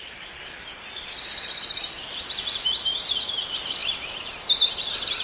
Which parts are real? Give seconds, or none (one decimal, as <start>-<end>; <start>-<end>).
none